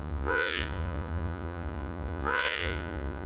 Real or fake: fake